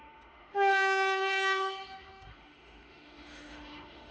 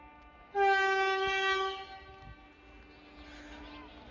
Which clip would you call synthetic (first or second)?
first